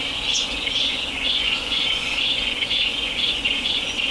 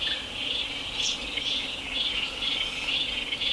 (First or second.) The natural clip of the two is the second